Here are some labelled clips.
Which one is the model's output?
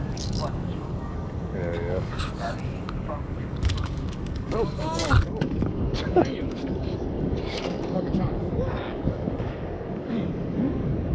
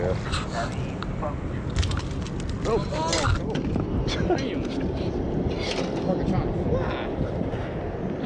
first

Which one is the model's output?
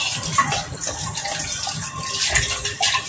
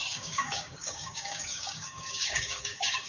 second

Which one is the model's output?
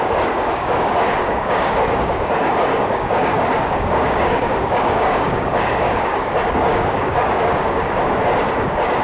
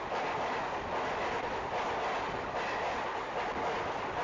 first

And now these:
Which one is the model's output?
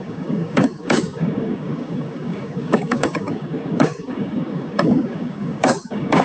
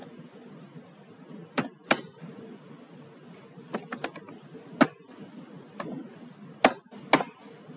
first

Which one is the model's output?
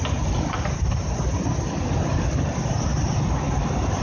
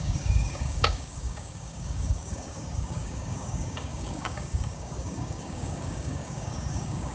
second